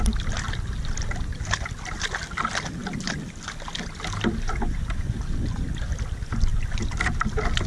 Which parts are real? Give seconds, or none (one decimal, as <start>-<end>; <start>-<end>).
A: 0.0-7.7